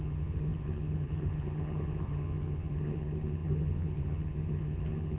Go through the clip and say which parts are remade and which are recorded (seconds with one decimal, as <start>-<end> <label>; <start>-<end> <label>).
0.0-5.2 remade